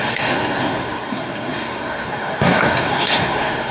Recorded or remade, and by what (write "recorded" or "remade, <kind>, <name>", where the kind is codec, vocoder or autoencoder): remade, codec, SNAC